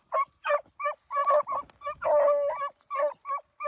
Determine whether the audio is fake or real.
real